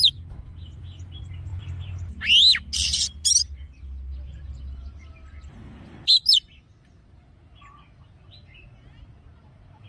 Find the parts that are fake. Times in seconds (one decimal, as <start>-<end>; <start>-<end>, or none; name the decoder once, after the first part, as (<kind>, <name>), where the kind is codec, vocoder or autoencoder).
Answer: none